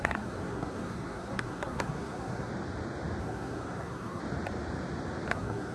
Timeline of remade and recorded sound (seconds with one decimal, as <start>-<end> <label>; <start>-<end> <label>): 0.0-2.5 remade; 2.5-3.2 recorded; 3.2-4.2 remade; 4.2-5.3 recorded; 5.3-5.7 remade